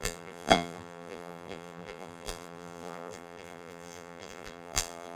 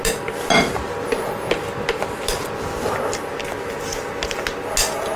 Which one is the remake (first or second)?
first